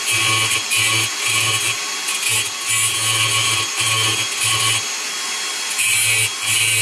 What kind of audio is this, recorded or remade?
recorded